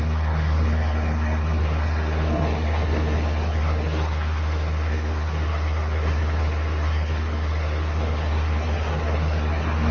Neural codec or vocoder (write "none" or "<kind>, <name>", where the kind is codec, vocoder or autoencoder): codec, SNAC